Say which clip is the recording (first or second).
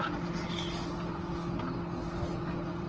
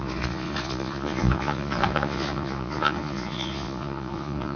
first